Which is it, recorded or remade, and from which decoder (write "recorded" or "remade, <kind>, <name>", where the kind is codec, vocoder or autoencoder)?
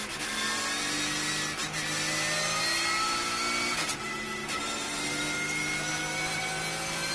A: recorded